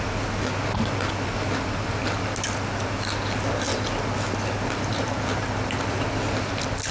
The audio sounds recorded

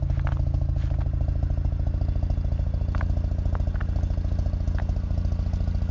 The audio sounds recorded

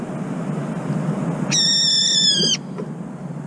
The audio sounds recorded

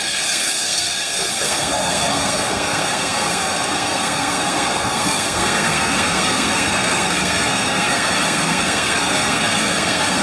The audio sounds remade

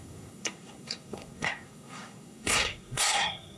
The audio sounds remade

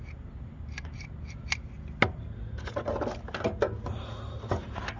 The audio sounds recorded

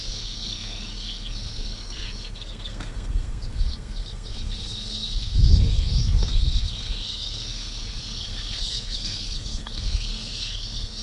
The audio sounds remade